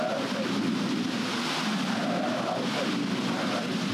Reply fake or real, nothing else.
real